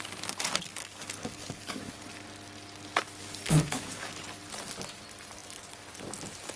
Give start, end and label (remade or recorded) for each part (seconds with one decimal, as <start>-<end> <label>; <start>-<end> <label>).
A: 0.0-0.8 recorded; 0.8-2.0 remade; 2.0-3.2 recorded; 3.2-4.1 remade; 4.1-6.6 recorded